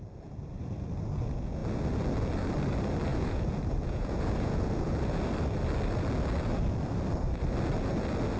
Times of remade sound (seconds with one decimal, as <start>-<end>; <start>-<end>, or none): 3.1-4.9